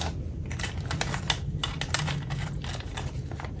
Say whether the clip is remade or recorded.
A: recorded